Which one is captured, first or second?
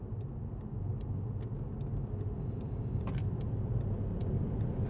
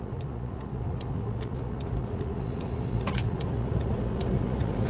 first